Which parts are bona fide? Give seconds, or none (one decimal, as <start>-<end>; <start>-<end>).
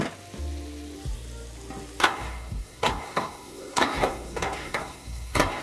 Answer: 0.0-2.0